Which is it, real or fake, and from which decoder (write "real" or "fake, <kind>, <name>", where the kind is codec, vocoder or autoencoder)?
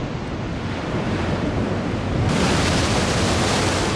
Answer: fake, vocoder, BigVGAN v2